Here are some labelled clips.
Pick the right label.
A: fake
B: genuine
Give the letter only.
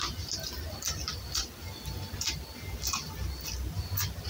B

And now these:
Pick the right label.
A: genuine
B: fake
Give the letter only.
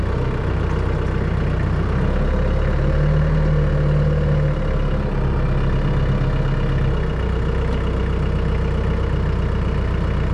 A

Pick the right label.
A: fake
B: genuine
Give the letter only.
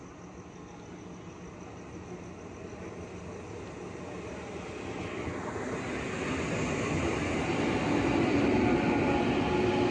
B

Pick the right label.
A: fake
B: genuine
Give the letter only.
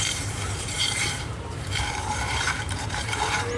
A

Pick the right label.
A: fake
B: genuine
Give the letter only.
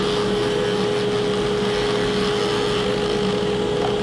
B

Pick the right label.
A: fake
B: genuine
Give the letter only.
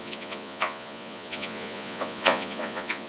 A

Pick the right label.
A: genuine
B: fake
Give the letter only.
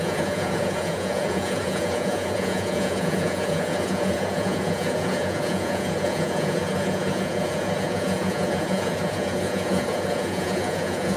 B